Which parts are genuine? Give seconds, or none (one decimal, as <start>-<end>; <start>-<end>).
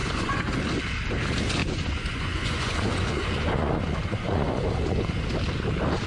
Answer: 0.5-1.6; 5.3-6.1